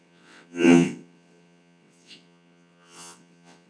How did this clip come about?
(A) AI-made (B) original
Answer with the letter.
A